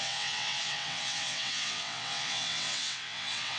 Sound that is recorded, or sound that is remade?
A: remade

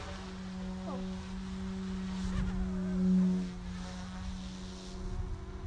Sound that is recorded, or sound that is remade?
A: recorded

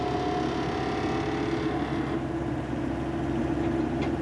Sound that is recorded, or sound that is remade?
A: recorded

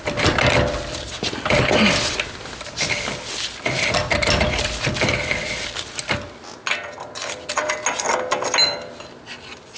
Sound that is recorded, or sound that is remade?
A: recorded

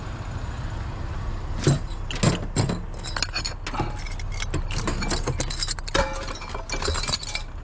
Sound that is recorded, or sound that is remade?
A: recorded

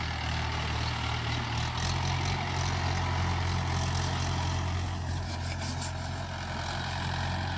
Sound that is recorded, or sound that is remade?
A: recorded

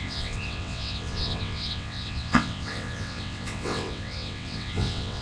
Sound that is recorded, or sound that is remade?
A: remade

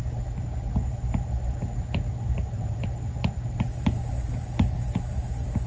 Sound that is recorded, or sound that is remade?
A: recorded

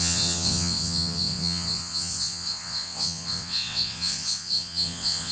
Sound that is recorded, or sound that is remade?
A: remade